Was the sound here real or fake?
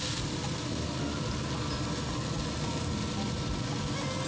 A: real